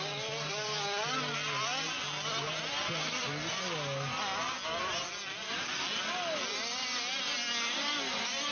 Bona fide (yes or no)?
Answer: yes